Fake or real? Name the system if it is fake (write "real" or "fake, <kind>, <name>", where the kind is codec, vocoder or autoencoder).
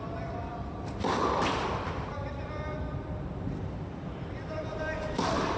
fake, vocoder, BigVGAN v2